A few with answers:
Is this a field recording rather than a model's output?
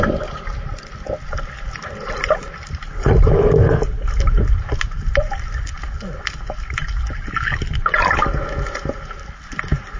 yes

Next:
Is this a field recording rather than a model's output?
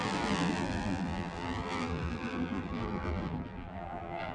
no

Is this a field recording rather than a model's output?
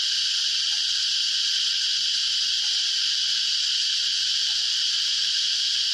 no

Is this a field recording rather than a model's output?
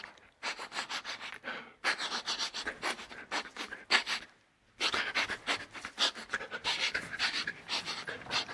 yes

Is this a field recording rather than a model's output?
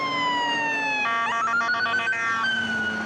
yes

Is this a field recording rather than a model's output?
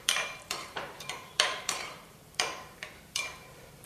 no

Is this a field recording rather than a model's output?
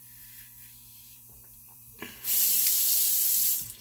no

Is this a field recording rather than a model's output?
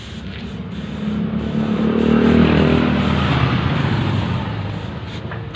yes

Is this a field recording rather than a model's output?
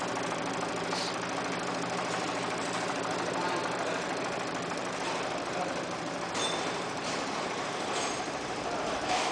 no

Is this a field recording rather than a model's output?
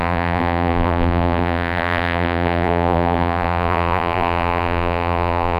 no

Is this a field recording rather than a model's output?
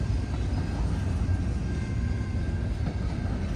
yes